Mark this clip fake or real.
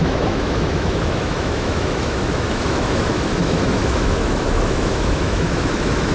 fake